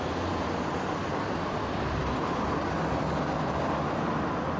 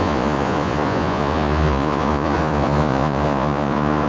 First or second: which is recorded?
first